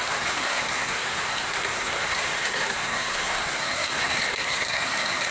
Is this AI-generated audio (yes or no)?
yes